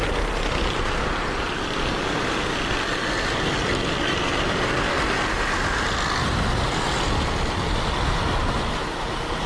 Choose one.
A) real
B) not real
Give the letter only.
A